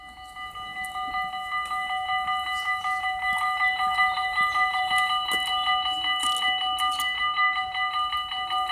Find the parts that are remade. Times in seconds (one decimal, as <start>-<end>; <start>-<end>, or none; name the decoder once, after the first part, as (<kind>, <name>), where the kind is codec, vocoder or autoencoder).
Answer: none